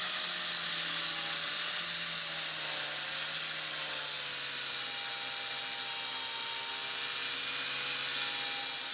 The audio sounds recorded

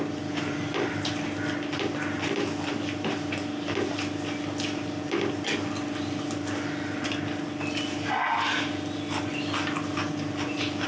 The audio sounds recorded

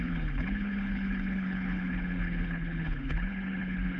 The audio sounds remade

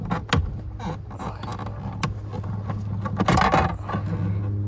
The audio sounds recorded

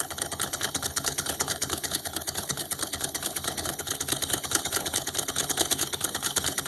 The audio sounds remade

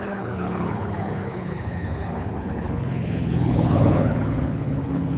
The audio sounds remade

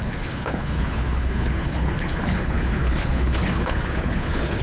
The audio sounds remade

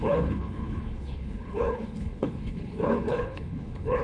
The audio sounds remade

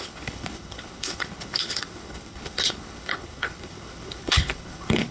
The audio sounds remade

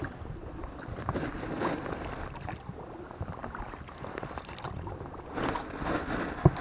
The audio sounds recorded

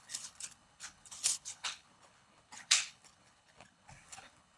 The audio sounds remade